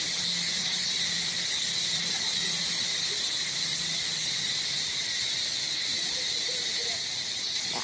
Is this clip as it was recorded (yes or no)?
yes